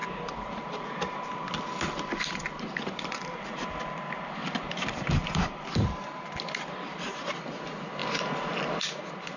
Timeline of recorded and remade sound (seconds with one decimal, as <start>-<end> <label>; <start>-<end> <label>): 0.0-1.5 remade; 1.5-4.4 recorded; 4.4-6.2 remade; 6.2-8.0 recorded; 8.0-8.8 remade; 8.8-9.4 recorded